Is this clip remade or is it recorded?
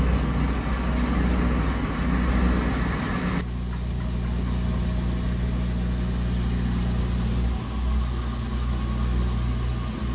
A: recorded